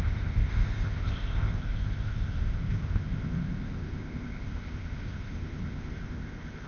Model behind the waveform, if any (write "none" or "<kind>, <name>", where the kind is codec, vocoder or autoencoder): codec, ZipCodec